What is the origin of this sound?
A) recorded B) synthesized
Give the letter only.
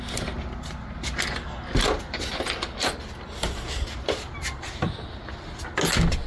A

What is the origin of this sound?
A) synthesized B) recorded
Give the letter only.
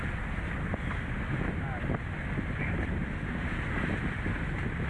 B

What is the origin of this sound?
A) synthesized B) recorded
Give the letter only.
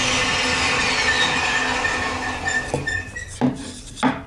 B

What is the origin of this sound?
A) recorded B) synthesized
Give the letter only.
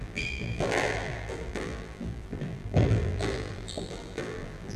B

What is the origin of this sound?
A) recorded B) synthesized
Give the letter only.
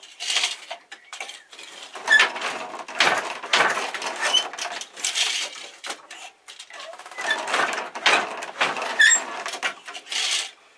B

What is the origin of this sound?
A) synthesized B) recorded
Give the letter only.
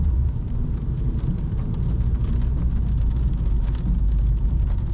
A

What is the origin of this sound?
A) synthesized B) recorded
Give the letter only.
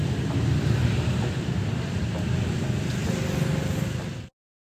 A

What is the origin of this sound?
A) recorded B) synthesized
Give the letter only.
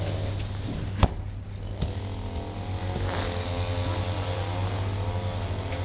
A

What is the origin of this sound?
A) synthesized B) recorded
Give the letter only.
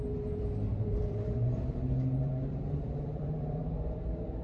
A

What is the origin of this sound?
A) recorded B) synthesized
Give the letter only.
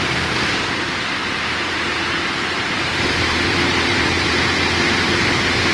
B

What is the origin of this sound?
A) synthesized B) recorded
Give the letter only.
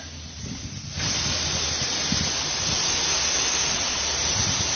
B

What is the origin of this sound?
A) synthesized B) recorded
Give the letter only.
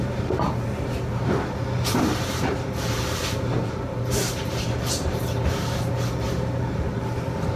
A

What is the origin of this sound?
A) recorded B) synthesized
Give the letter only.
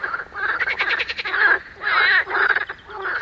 B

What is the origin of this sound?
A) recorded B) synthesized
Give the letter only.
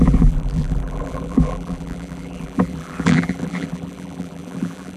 B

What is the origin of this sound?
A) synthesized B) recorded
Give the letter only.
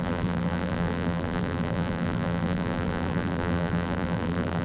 A